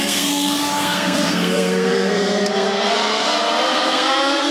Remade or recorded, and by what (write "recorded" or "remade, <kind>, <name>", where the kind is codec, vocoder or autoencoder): remade, codec, SNAC